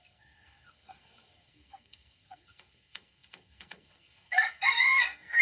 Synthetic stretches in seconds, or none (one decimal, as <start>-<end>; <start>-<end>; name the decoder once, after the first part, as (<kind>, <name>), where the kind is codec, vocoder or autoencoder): 0.0-5.4 (codec, SNAC)